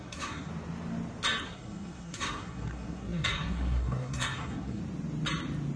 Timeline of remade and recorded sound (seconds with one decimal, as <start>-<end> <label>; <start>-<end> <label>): 0.0-0.5 remade; 0.5-1.4 recorded; 1.4-4.8 remade; 4.8-5.8 recorded